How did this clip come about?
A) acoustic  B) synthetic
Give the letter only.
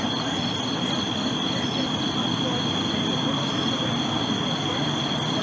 A